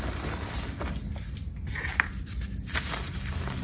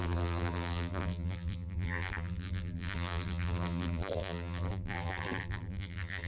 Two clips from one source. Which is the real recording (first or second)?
first